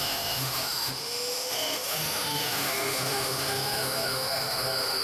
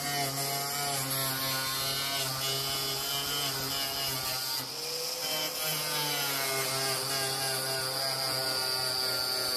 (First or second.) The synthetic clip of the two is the first